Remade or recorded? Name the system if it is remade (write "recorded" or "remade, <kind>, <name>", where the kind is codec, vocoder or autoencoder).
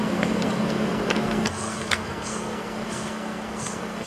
remade, codec, SNAC